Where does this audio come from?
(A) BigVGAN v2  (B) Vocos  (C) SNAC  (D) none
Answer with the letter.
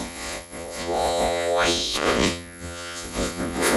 B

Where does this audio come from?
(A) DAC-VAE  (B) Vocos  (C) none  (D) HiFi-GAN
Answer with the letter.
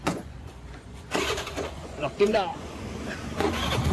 B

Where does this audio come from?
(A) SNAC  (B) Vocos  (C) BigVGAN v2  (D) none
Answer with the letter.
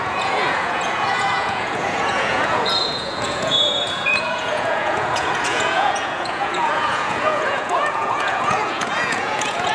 B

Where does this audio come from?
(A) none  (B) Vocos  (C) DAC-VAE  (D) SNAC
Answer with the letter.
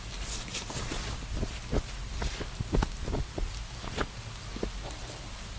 A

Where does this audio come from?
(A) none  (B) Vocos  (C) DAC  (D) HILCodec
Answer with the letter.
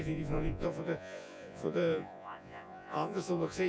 B